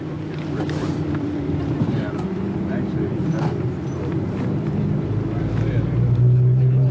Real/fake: fake